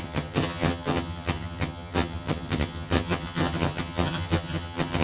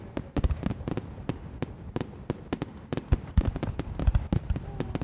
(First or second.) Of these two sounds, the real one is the second